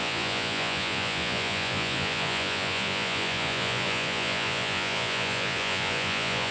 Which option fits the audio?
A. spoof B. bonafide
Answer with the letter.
A